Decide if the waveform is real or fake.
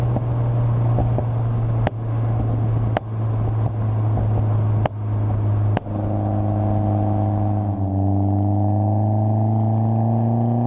real